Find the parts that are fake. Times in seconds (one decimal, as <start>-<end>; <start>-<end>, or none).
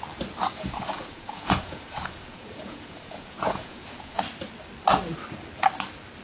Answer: 0.5-4.2